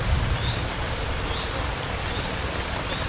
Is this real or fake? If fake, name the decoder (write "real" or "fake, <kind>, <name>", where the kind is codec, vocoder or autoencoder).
real